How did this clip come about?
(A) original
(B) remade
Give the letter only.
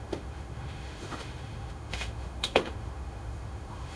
B